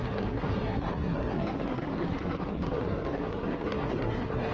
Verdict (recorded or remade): remade